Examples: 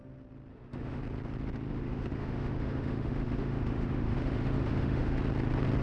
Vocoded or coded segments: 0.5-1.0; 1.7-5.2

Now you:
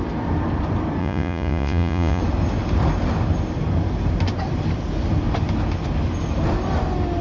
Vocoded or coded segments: 1.0-2.2